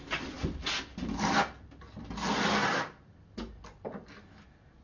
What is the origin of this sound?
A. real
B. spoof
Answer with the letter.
A